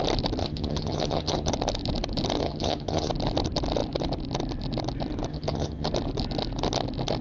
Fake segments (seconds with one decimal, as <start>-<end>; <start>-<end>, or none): 0.4-1.5; 2.4-3.1; 5.3-5.9